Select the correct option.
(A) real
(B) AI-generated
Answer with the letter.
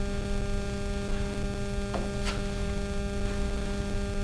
A